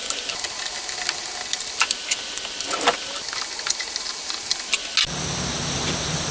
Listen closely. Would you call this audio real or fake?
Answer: real